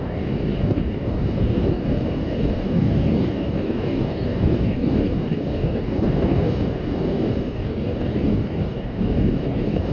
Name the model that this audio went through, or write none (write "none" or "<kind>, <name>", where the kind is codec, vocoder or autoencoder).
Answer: codec, DAC